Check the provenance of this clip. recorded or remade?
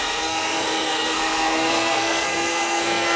remade